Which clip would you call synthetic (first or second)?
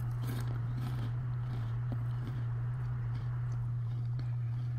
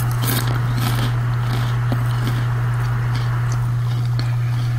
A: first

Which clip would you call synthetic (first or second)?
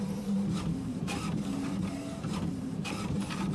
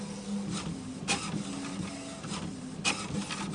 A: first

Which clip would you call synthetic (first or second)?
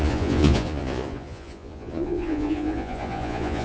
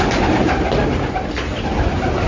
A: first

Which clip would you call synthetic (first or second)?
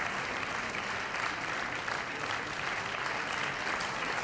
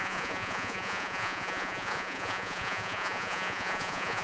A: second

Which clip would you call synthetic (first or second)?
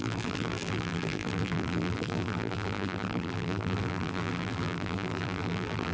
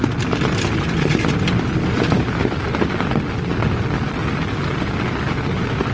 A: first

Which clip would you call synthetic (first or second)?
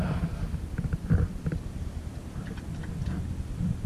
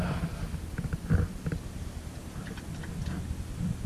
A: first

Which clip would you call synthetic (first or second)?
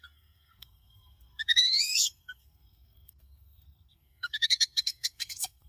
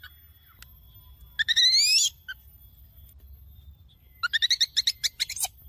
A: first